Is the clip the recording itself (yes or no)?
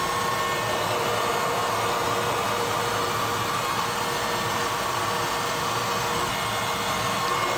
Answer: yes